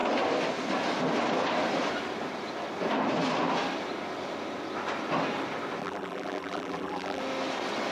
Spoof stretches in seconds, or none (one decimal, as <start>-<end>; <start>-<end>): 5.8-7.2